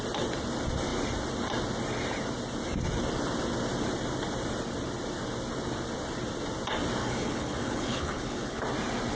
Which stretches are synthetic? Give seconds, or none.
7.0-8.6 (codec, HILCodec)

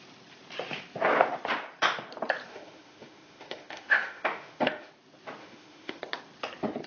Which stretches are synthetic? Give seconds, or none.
2.5-4.9 (autoencoder, DAC-VAE); 5.4-6.0

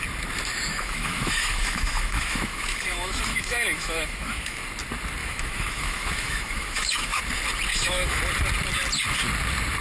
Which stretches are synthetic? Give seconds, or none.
0.7-4.6 (autoencoder, DAC-VAE); 5.2-7.2; 7.7-8.2

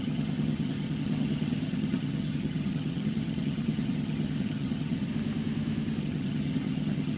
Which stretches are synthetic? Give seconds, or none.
0.0-5.1 (vocoder, HiFi-GAN); 6.0-7.2

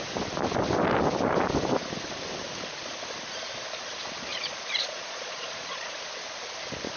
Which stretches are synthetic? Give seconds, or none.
4.3-5.9 (vocoder, Vocos)